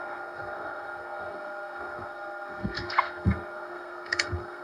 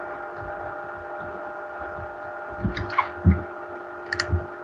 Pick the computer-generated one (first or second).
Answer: first